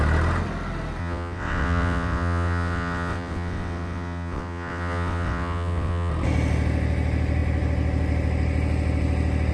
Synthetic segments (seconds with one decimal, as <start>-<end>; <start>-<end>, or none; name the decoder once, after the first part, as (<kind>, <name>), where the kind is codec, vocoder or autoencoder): 1.0-6.1 (vocoder, WaveNeXt)